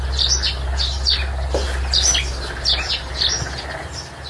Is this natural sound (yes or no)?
yes